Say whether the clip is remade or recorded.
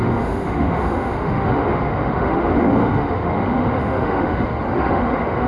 remade